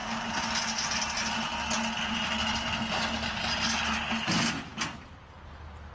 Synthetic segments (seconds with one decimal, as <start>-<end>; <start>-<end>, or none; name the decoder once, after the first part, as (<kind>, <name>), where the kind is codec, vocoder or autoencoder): none